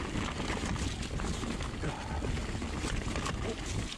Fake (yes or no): no